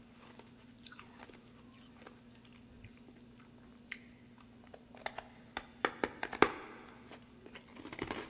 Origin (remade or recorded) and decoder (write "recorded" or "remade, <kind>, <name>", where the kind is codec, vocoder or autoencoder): recorded